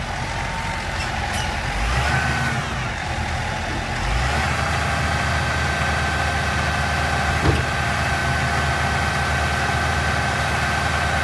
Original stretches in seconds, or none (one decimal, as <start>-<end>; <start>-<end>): 0.0-11.2